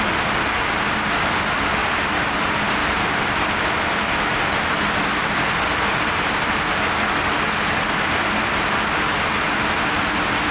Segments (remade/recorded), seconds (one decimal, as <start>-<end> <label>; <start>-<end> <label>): 0.0-1.8 recorded; 1.8-6.7 remade; 6.7-10.5 recorded